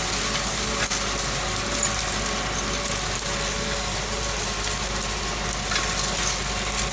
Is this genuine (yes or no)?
yes